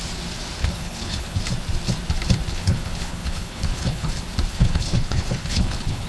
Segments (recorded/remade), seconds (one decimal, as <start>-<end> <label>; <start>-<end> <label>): 0.0-0.6 recorded; 0.6-1.4 remade; 1.4-2.5 recorded; 2.5-4.1 remade; 4.1-4.5 recorded; 4.5-6.1 remade

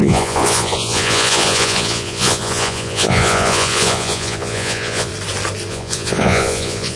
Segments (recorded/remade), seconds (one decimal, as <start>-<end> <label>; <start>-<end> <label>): 0.0-5.1 remade; 5.1-5.7 recorded; 5.7-7.0 remade

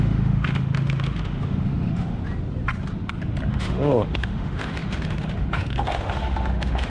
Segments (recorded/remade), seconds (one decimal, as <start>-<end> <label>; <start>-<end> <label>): 0.0-2.2 remade; 2.2-3.5 recorded; 3.5-6.9 remade

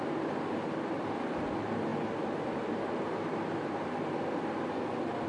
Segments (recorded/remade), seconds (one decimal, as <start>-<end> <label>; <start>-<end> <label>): 0.0-5.3 recorded

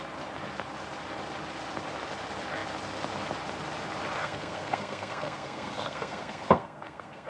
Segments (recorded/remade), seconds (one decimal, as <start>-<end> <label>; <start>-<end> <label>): 0.0-4.2 recorded; 4.2-7.3 remade

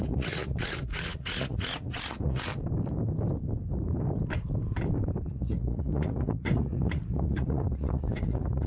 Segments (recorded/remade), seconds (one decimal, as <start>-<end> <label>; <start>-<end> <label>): 0.0-2.5 remade; 2.5-5.3 recorded; 5.3-8.7 remade